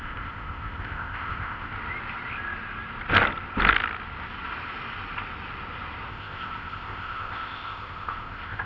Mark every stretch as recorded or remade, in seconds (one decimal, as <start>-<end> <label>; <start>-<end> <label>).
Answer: 0.0-1.7 remade; 1.7-6.1 recorded; 6.1-8.7 remade